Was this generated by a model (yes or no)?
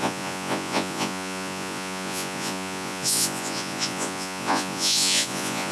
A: yes